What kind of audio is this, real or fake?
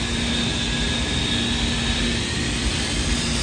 real